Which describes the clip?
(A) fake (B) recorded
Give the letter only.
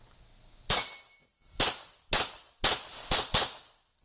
B